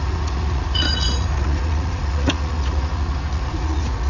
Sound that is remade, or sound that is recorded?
remade